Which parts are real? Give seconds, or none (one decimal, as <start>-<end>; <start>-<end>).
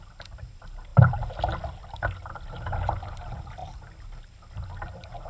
0.0-5.3